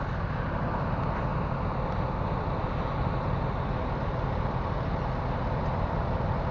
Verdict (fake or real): real